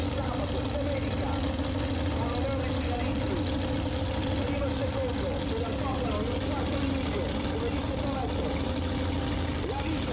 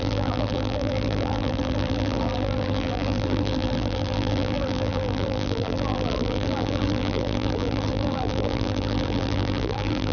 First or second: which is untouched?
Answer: first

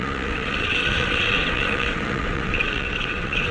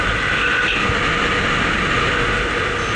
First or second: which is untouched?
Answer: second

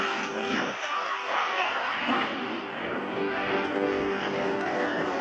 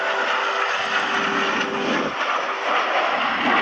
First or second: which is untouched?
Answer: second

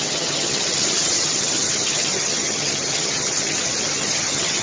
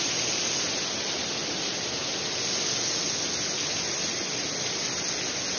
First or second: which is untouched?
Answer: second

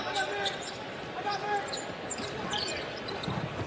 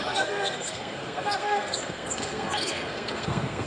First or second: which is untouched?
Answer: first